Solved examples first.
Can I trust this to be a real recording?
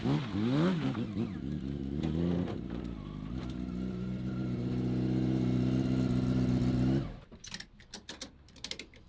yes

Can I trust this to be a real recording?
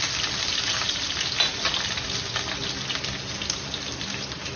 yes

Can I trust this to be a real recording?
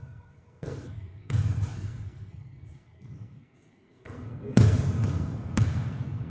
no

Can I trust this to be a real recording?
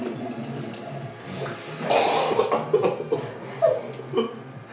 yes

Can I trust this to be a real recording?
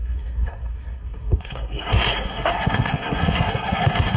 no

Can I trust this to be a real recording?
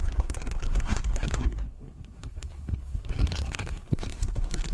no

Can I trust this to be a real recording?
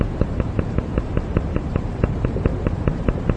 no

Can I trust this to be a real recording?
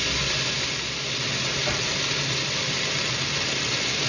yes